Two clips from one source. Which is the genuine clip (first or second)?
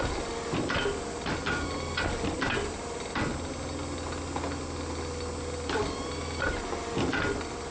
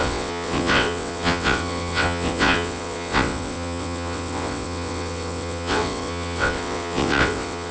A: first